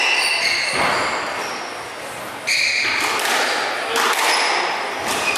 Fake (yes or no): no